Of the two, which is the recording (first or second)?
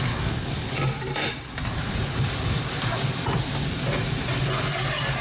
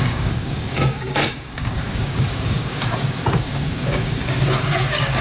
first